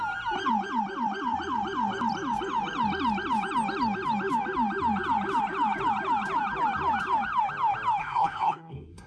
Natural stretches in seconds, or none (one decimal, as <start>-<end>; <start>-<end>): 0.0-8.0